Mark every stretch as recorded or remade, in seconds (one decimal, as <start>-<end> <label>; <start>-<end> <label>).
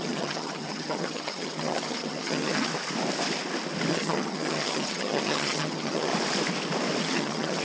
0.0-2.7 remade; 2.7-3.9 recorded; 3.9-6.1 remade; 6.1-7.0 recorded; 7.0-7.6 remade